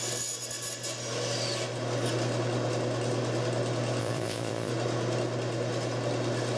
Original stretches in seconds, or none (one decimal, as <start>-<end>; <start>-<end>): 0.0-4.0; 4.7-6.6